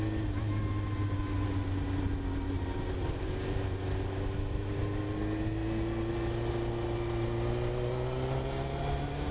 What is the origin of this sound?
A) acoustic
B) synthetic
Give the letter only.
A